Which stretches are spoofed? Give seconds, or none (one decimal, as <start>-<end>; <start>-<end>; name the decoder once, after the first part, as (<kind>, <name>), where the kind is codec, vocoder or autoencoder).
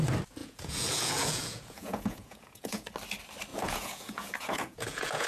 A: 0.4-2.9 (vocoder, Vocos); 3.5-5.3